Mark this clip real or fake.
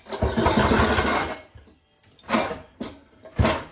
real